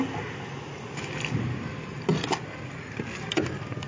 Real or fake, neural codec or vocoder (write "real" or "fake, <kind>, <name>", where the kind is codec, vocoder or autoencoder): real